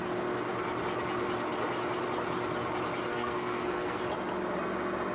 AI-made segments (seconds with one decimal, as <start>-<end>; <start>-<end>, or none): 3.1-4.0